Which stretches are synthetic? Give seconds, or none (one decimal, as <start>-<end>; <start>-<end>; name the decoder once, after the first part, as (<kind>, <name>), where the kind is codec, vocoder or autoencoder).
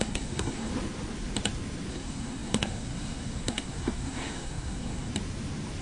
0.0-0.7 (codec, SNAC); 1.9-5.1